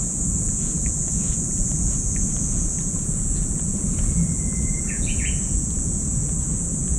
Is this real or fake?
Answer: fake